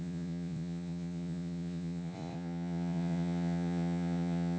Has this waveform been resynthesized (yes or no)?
yes